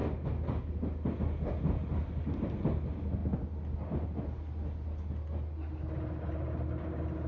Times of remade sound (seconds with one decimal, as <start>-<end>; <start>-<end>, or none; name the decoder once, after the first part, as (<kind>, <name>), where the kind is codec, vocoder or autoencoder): none